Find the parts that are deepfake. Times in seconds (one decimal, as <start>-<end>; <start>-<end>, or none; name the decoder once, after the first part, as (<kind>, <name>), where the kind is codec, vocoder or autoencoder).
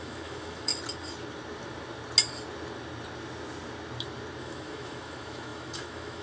0.0-0.7 (autoencoder, DAC-VAE); 4.4-6.2